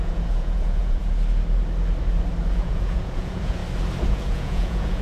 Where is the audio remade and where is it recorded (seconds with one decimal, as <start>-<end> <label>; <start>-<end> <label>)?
0.0-1.0 remade; 1.0-2.5 recorded; 2.5-3.6 remade; 3.6-4.1 recorded; 4.1-5.0 remade